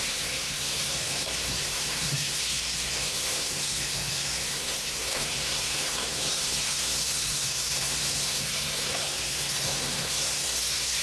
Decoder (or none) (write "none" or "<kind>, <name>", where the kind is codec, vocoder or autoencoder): codec, SNAC